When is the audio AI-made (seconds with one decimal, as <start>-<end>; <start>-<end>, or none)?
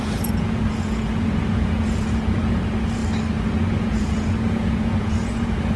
0.0-3.0; 3.8-5.8